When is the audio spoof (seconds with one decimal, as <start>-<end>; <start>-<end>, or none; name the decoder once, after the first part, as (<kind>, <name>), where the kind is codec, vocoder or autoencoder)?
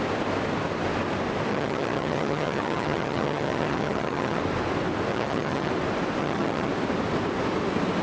1.5-4.4 (vocoder, HiFi-GAN); 5.1-5.7; 6.2-6.7